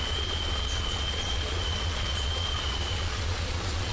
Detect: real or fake fake